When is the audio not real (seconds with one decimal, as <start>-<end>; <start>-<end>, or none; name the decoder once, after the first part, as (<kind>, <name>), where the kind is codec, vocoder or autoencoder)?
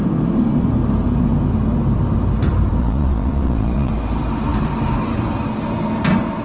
2.8-3.9 (vocoder, Vocos)